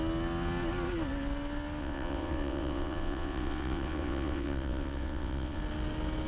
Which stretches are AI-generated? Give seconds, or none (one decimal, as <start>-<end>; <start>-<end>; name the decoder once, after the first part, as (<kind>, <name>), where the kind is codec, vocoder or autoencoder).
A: 1.8-5.6 (vocoder, WaveNeXt)